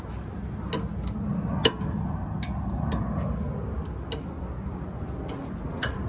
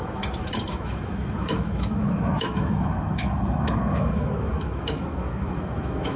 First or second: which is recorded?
first